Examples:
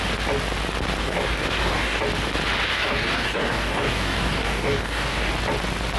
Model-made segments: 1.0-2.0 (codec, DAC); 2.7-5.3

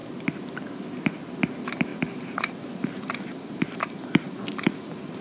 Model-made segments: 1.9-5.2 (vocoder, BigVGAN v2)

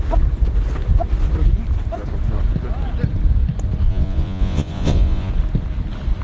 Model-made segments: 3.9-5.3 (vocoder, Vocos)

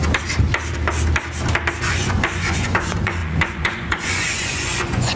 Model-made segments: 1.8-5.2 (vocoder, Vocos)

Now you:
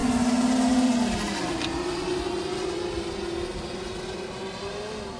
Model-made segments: none

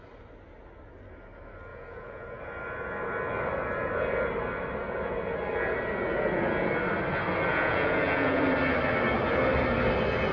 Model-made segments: 1.7-2.4 (vocoder, Vocos); 7.5-8.4

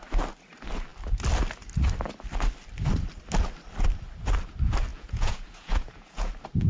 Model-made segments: 4.9-6.3 (vocoder, Vocos)

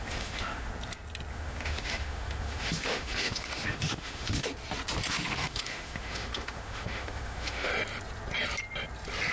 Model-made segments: 0.0-0.7 (autoencoder, DAC-VAE); 1.3-4.5; 5.1-7.7